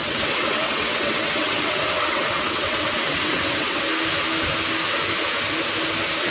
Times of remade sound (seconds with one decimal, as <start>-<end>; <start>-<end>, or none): 0.0-3.8